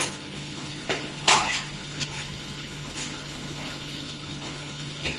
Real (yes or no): no